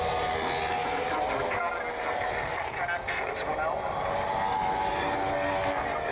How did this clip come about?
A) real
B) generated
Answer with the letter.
A